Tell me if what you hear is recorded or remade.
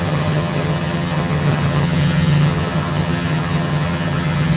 remade